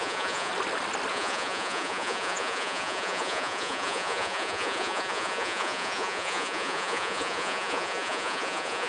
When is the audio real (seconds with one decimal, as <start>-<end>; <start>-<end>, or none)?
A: 0.5-1.1